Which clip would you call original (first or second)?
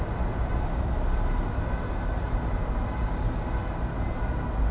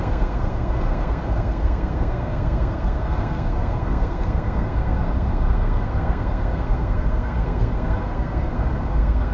first